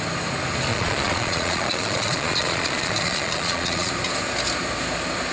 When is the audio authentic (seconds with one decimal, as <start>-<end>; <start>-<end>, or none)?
0.0-0.7; 3.9-5.3